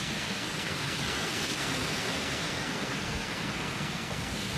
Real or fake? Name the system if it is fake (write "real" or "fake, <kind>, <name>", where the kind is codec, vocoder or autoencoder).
fake, codec, SNAC